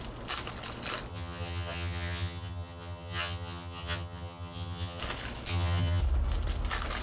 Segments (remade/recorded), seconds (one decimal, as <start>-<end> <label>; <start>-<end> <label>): 0.0-1.1 recorded; 1.1-5.0 remade; 5.0-5.5 recorded; 5.5-6.0 remade; 6.0-7.0 recorded